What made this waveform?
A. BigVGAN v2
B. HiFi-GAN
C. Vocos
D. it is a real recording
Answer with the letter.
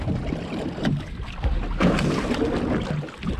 D